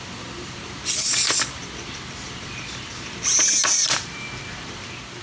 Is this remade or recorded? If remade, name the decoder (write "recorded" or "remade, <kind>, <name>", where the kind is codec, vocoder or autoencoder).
recorded